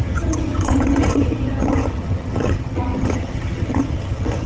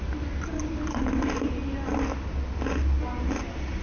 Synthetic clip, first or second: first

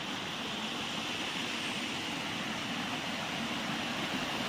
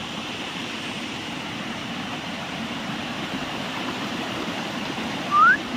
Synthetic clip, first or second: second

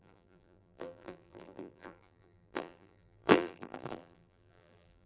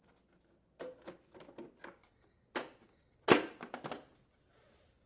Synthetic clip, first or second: first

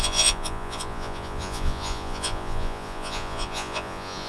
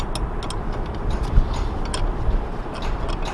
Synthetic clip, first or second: first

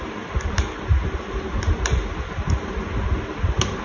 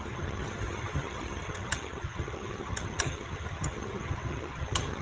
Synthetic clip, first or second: second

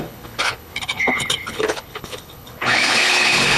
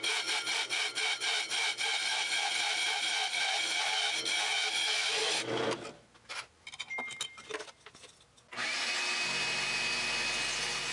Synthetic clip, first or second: first